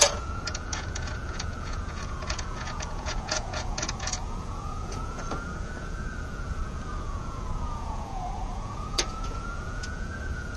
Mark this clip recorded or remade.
remade